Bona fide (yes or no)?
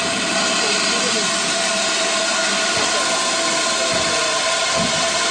yes